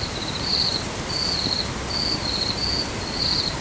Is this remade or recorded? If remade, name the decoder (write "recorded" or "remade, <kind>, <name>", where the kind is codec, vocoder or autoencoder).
recorded